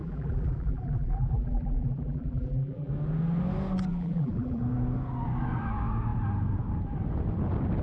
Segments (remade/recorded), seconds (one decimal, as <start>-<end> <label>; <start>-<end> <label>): 0.0-2.9 remade; 2.9-3.9 recorded; 3.9-4.6 remade; 4.6-7.8 recorded